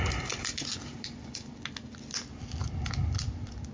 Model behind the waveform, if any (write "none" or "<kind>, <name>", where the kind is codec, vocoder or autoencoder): none